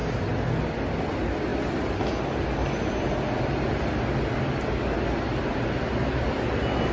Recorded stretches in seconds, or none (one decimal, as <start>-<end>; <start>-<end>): 0.0-6.9